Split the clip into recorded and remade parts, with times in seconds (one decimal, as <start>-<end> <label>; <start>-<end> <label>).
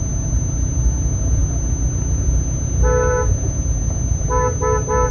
0.0-5.1 recorded